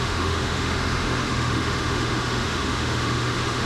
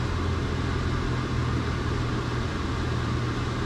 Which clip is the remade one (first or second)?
first